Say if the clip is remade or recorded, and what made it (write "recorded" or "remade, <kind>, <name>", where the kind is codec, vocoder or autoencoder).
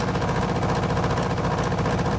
recorded